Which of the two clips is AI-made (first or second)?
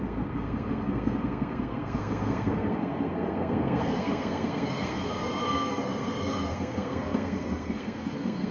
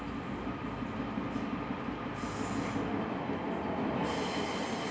first